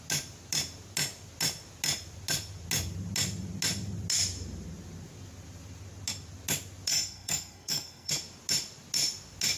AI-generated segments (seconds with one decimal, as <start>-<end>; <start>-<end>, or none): 6.9-8.1